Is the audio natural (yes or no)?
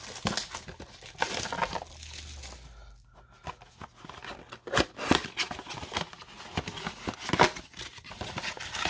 yes